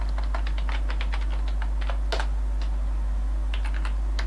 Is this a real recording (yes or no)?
yes